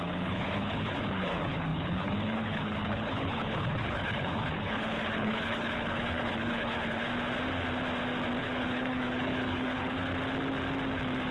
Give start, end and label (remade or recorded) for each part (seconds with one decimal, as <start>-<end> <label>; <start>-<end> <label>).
0.0-7.1 remade; 7.1-8.4 recorded; 8.4-10.0 remade; 10.0-11.3 recorded